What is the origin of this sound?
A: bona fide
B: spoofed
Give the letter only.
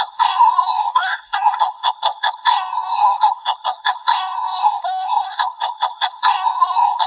B